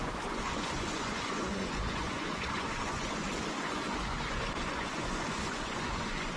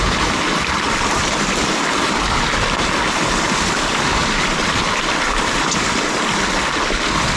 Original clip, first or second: second